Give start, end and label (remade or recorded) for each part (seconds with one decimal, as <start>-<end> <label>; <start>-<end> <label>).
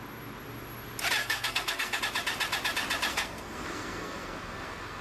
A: 0.0-1.2 recorded; 1.2-2.0 remade; 2.0-3.1 recorded; 3.1-5.0 remade